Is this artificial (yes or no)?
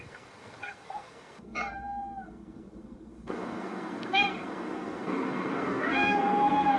yes